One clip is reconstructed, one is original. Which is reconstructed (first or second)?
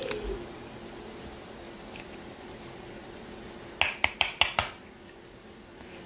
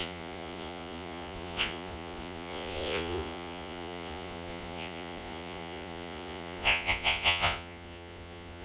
second